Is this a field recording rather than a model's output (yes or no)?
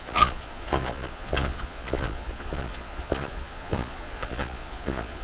no